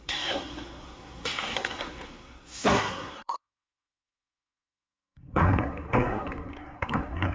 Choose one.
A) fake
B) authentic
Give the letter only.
A